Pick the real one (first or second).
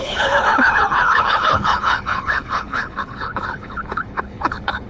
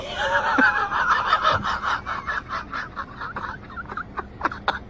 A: second